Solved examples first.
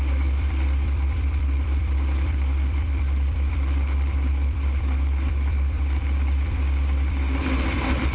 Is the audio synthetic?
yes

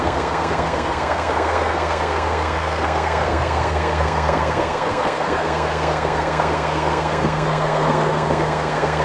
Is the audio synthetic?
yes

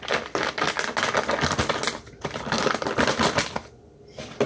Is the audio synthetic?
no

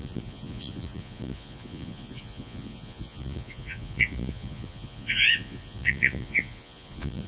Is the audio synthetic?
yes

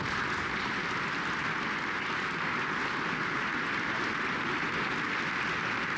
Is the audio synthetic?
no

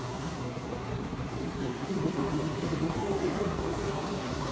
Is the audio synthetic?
yes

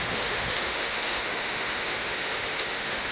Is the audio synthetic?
yes